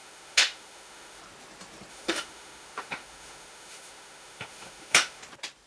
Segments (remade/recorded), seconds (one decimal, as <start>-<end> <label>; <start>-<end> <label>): 0.0-1.2 remade; 1.2-1.9 recorded; 1.9-5.2 remade; 5.2-5.7 recorded